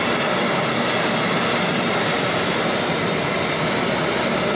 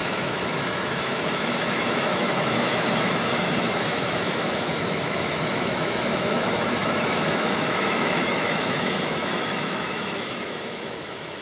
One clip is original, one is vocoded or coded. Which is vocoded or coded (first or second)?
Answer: second